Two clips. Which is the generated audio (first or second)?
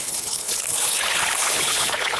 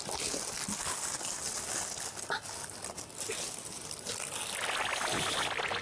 first